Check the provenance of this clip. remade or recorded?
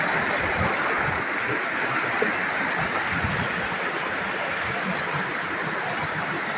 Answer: recorded